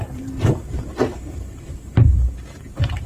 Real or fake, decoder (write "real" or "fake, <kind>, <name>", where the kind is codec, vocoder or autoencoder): fake, vocoder, BigVGAN v2